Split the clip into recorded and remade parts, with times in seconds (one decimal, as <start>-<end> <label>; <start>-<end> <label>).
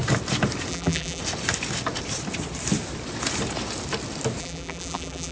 0.0-0.7 recorded; 0.7-1.2 remade; 1.2-4.4 recorded; 4.4-5.3 remade